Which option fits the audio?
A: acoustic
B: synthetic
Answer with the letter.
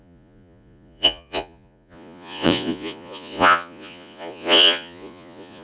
B